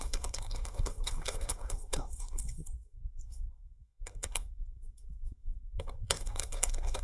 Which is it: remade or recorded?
remade